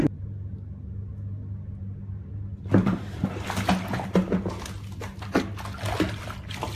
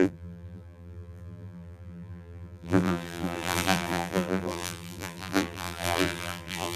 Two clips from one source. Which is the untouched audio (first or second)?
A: first